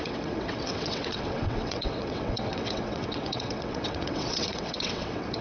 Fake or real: fake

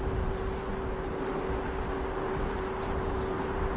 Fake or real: real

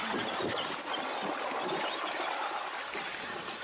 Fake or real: real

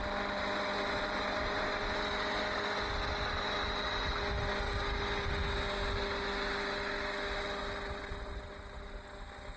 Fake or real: real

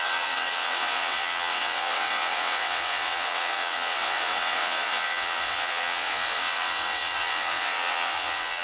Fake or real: fake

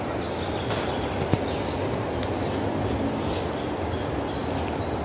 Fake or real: real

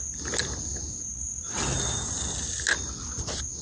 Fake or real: real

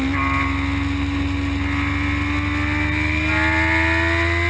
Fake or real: real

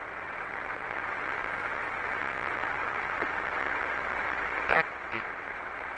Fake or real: fake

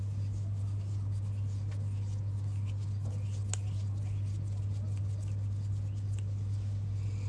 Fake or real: real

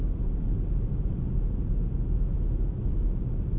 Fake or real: real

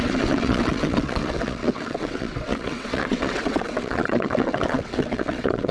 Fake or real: fake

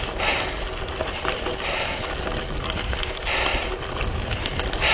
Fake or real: real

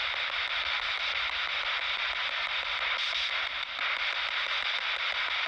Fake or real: real